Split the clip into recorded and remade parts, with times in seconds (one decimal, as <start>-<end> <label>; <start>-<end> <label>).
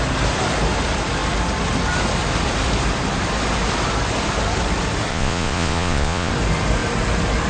0.0-5.1 recorded; 5.1-6.3 remade; 6.3-7.5 recorded